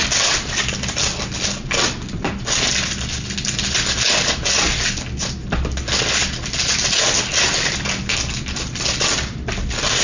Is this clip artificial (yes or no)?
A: no